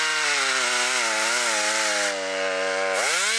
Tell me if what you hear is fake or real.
real